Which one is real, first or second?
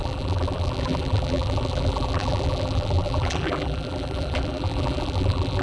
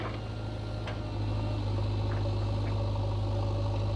second